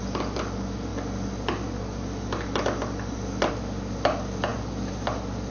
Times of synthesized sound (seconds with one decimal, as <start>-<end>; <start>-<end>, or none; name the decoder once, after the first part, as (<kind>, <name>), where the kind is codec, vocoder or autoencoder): none